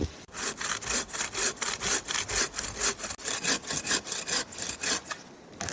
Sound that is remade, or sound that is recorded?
recorded